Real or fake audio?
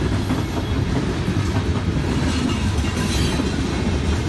real